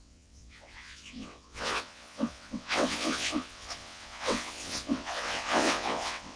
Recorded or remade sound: remade